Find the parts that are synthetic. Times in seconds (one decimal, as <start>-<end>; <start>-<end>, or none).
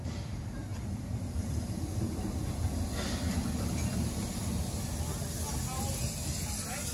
0.7-3.1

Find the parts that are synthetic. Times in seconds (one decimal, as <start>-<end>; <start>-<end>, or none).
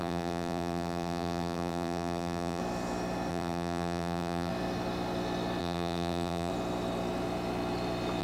0.0-2.6; 3.3-4.5; 5.6-6.5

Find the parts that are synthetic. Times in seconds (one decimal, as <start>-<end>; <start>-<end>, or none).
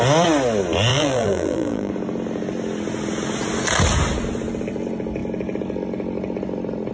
0.9-1.9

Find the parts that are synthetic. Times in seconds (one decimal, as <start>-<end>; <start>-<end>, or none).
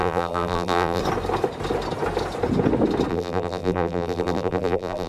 0.0-1.0; 3.1-5.1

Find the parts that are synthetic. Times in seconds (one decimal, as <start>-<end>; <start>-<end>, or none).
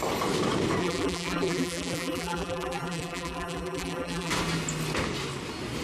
0.8-4.3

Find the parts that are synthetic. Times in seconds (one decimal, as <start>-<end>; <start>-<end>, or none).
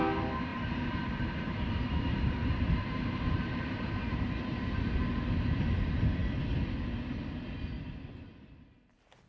0.5-5.0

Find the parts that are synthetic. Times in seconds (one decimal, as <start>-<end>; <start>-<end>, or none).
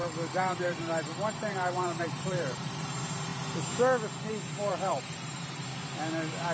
0.0-2.9; 4.7-5.6